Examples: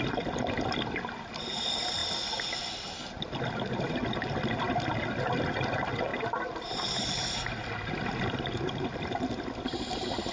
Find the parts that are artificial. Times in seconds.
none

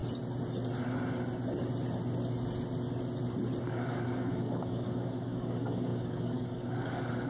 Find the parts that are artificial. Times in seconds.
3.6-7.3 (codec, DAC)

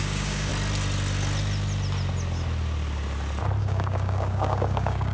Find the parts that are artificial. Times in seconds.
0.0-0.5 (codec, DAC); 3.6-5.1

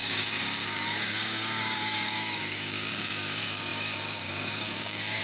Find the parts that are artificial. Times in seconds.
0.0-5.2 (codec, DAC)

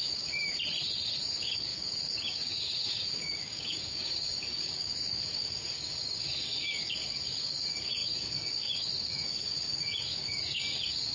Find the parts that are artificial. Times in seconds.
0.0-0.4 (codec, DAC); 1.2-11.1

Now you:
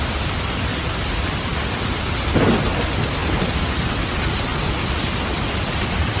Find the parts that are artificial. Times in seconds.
none